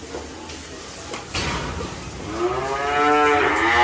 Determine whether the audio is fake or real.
real